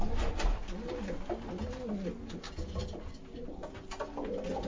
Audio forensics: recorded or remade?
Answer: recorded